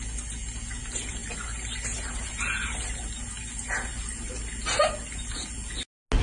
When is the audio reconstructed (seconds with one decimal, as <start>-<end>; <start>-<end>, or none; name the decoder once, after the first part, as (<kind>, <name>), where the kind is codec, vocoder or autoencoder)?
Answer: none